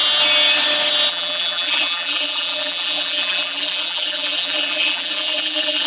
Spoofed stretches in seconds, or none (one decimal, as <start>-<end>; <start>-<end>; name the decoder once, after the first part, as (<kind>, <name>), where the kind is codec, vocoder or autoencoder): 1.1-5.9 (vocoder, BigVGAN v2)